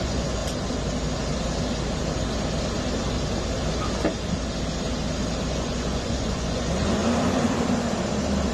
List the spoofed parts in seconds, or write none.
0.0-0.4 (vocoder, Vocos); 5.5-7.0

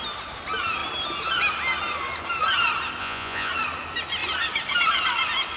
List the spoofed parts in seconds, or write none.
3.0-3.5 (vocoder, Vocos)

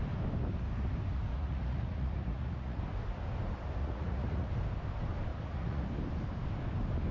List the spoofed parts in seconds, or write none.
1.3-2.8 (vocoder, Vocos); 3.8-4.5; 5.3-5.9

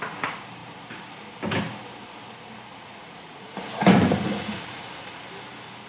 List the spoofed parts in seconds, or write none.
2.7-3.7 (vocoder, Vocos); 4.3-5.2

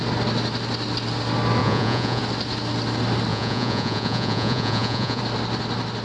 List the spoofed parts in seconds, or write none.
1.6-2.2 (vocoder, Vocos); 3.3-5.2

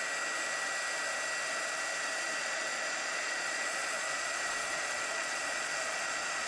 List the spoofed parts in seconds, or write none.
2.4-6.5 (vocoder, Vocos)

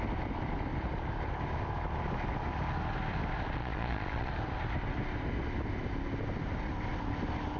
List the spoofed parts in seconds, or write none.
3.6-4.3 (vocoder, Vocos)